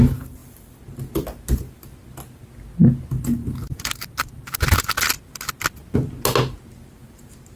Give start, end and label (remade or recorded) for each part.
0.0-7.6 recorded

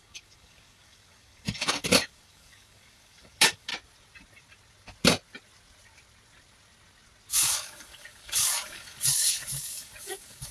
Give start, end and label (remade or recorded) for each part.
0.0-3.7 remade; 3.7-7.3 recorded; 7.3-10.5 remade

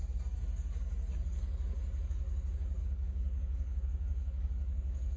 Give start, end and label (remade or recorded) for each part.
0.0-2.8 recorded; 2.8-5.2 remade

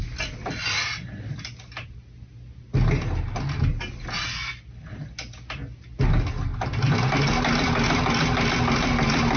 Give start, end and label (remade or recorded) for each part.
0.0-9.4 recorded

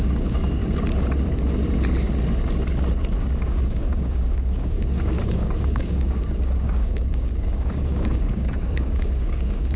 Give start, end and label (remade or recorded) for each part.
0.0-0.6 remade; 0.6-3.2 recorded; 3.2-9.8 remade

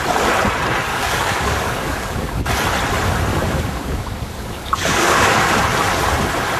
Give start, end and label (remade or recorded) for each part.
0.0-0.9 recorded; 0.9-2.5 remade; 2.5-3.3 recorded; 3.3-5.6 remade; 5.6-6.6 recorded